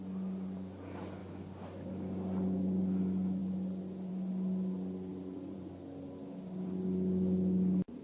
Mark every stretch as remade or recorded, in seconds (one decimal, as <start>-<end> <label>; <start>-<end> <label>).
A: 0.0-5.1 recorded; 5.1-5.7 remade; 5.7-8.0 recorded